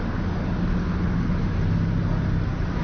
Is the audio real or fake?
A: real